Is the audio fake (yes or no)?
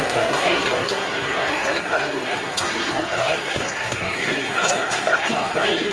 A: yes